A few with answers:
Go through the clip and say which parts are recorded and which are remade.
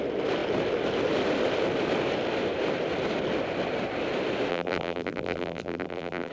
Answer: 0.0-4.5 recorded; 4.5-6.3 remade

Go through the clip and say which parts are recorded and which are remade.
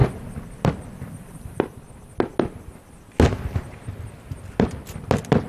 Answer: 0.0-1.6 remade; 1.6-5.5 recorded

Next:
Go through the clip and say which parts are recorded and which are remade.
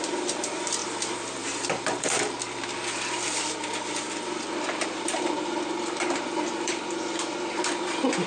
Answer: 0.0-8.3 remade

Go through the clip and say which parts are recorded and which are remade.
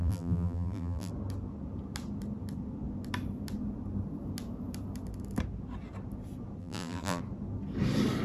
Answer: 0.0-1.1 remade; 1.1-6.6 recorded; 6.6-7.2 remade; 7.2-8.2 recorded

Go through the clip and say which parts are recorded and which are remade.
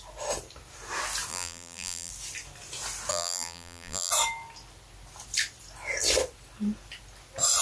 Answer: 0.0-1.3 recorded; 1.3-2.1 remade; 2.1-3.1 recorded; 3.1-4.1 remade; 4.1-7.6 recorded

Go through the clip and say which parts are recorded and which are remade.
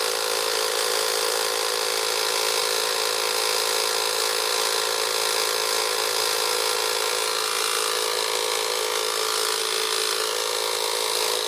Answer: 0.0-11.5 recorded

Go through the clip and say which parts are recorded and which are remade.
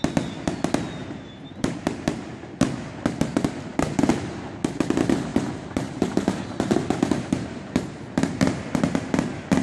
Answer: 0.0-1.0 recorded; 1.0-1.8 remade; 1.8-5.3 recorded; 5.3-8.6 remade; 8.6-9.6 recorded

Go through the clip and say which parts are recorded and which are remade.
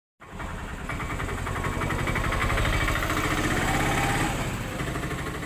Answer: 0.0-5.5 recorded